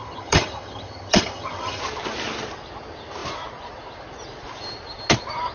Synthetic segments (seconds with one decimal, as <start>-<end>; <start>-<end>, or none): 0.0-1.8

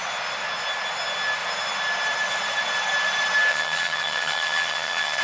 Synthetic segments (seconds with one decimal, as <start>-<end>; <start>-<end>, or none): 3.5-5.2

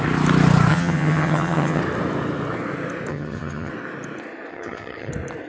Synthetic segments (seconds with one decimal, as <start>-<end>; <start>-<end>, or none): 0.7-1.8; 3.1-3.7; 4.5-5.1

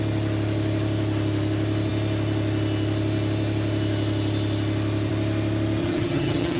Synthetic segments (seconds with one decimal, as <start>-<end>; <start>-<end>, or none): 5.8-6.6

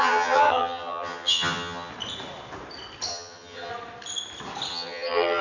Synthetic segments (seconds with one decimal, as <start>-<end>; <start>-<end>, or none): 0.0-1.9; 3.1-3.7; 4.7-5.4

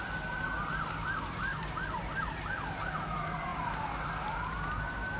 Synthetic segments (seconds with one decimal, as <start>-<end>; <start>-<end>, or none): none